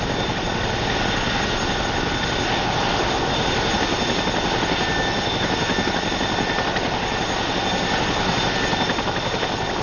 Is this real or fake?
real